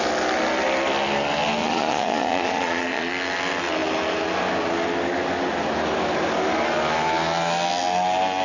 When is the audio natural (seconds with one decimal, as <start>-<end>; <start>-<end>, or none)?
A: 0.0-1.6; 3.1-8.4